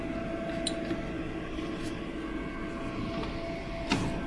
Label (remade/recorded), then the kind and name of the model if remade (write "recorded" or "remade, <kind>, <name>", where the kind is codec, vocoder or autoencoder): recorded